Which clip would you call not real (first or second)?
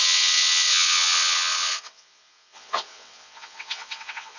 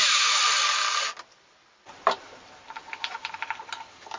first